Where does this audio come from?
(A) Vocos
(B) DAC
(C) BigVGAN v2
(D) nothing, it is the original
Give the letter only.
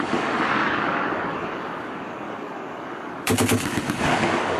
B